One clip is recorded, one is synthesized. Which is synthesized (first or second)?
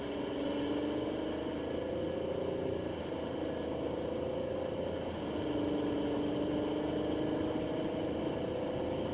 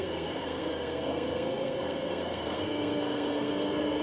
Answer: second